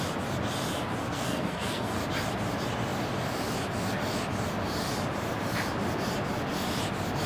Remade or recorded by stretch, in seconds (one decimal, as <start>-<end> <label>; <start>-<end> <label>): 0.0-1.0 recorded; 1.0-2.0 remade; 2.0-7.3 recorded